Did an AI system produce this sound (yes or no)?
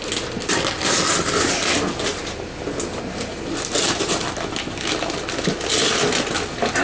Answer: no